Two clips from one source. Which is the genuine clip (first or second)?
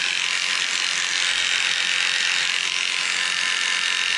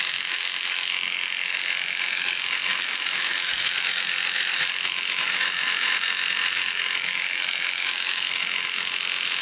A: first